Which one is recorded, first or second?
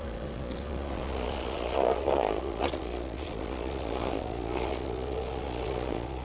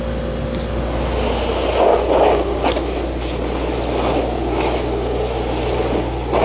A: second